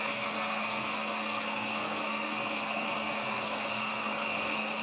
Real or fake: fake